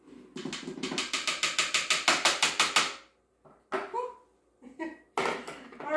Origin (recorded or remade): recorded